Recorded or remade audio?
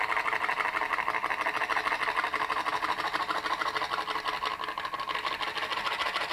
recorded